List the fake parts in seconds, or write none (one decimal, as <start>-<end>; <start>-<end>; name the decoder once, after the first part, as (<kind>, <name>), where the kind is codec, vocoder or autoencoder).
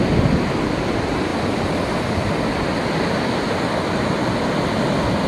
none